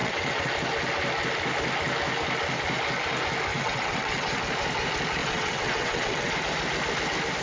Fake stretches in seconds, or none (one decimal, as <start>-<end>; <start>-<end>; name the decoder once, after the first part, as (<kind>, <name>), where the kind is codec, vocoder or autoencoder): 0.0-0.5 (vocoder, WaveNeXt); 3.5-4.4; 5.2-6.3